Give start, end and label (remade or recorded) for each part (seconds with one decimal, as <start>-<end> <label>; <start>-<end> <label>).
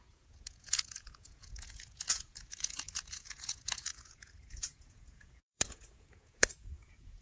0.0-7.2 remade